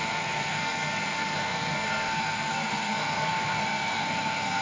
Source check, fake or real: fake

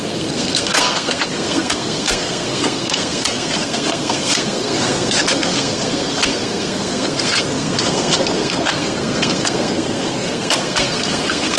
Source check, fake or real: fake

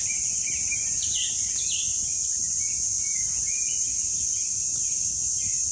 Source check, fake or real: real